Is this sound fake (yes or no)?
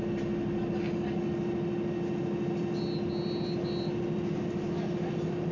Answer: no